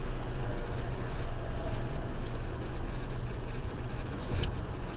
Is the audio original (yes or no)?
no